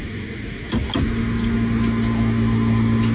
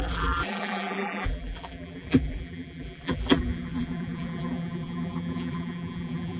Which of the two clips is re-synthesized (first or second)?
second